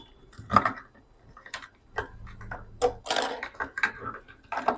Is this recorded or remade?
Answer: recorded